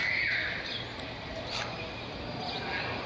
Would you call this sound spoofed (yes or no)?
no